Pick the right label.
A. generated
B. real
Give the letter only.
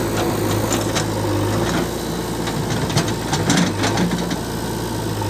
B